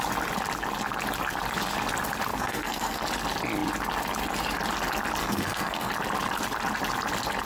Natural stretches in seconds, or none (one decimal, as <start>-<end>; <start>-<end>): 0.0-2.3; 3.0-5.2; 5.9-7.5